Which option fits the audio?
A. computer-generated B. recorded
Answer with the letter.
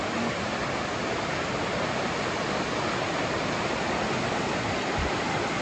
B